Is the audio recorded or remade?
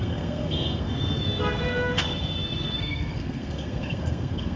remade